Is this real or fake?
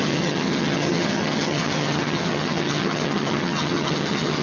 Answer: fake